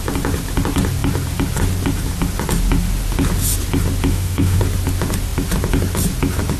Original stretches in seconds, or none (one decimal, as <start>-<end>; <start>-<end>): 0.0-4.1; 4.6-6.6